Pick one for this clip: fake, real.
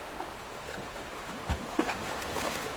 fake